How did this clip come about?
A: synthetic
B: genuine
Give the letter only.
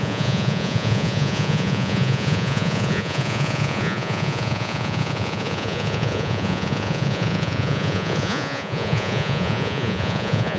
A